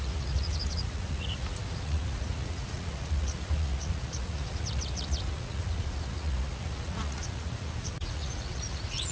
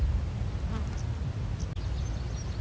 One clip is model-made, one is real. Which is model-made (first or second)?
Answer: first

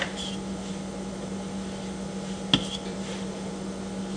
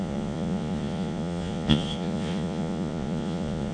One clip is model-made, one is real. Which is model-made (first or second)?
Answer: second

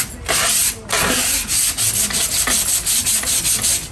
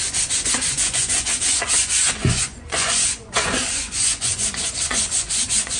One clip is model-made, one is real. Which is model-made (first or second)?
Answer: second